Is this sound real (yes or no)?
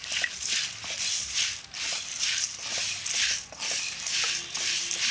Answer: yes